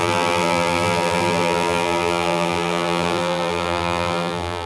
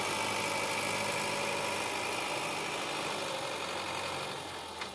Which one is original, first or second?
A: second